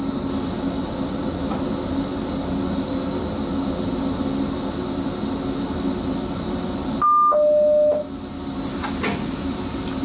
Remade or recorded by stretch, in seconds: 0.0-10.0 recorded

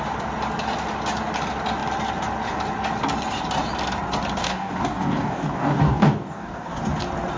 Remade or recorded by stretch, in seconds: 0.0-4.4 recorded; 4.4-6.8 remade; 6.8-7.4 recorded